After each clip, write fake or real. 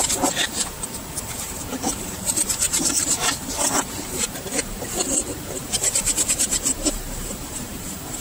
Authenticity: fake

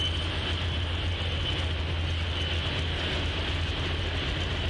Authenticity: real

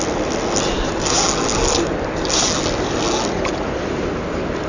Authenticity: real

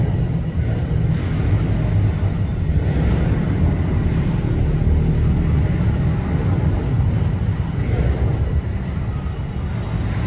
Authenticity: real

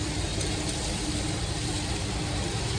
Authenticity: real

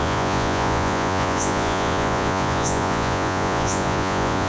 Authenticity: fake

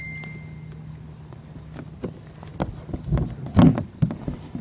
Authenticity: real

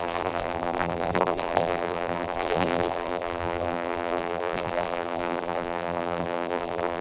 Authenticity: fake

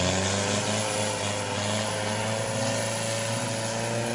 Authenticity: real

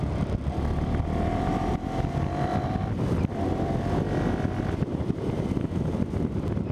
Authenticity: fake